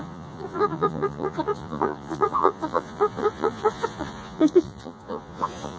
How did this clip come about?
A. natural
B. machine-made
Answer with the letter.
B